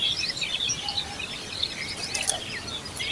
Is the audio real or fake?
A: real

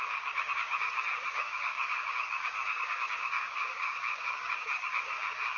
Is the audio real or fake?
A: fake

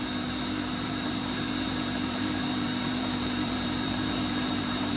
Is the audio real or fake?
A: fake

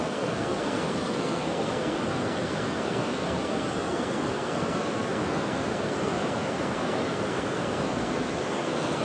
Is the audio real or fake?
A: fake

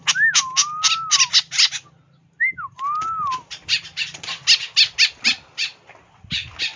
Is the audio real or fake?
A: real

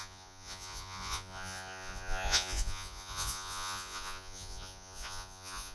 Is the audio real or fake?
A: fake